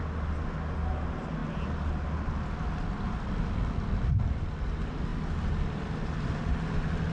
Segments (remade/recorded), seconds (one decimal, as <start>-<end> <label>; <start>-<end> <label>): 0.0-7.1 recorded